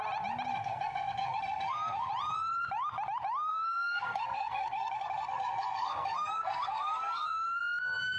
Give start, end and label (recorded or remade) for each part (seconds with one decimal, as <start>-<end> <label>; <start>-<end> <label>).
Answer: 0.0-0.5 recorded; 0.5-2.1 remade; 2.1-3.5 recorded; 3.5-7.6 remade; 7.6-8.2 recorded